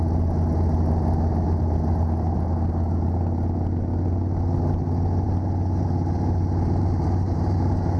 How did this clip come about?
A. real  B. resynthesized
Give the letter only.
A